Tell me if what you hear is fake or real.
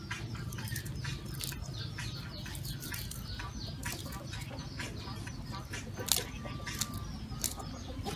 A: real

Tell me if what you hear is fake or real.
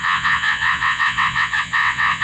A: fake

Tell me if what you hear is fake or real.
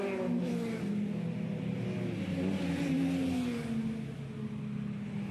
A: real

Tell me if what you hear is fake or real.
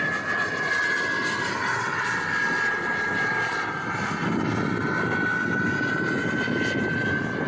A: real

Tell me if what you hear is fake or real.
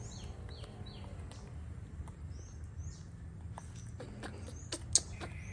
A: real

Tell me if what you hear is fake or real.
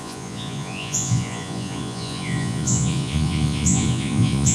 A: fake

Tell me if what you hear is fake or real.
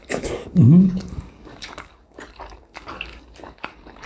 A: fake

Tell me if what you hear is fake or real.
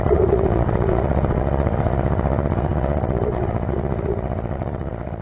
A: fake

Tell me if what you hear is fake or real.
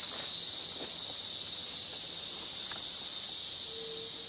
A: real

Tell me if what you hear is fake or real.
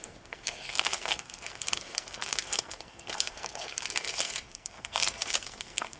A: fake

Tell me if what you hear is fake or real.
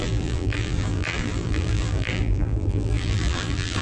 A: fake